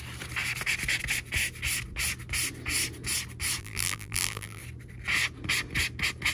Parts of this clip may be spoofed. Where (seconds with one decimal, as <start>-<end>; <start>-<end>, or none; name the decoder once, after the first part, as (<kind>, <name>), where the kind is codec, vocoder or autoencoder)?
3.6-4.6 (vocoder, BigVGAN v2)